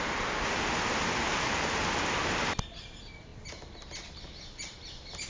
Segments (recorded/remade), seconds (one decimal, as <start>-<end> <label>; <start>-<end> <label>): 0.0-5.3 recorded